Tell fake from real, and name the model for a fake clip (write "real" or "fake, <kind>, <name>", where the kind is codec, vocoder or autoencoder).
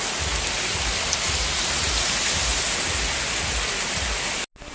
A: real